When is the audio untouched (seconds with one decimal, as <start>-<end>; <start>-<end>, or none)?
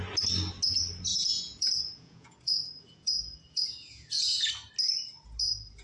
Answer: 0.0-1.1; 4.5-5.8